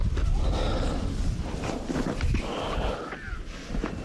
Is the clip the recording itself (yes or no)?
yes